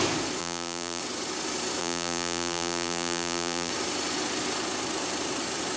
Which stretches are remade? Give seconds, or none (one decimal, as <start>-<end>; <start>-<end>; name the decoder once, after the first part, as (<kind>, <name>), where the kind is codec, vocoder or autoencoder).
0.4-1.0 (vocoder, BigVGAN v2); 1.8-3.7